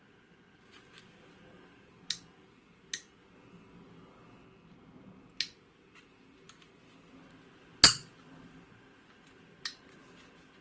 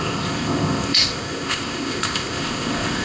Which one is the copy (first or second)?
second